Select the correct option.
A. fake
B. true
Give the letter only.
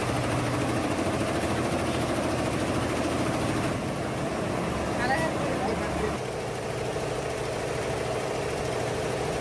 B